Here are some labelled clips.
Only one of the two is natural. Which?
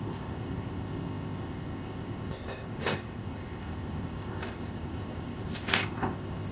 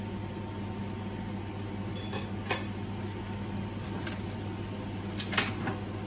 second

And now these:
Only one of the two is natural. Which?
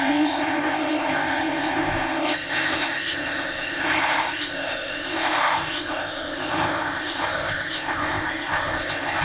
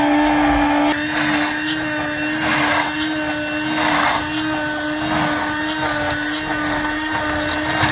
second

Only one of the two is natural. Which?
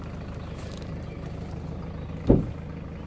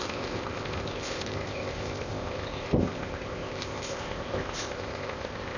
first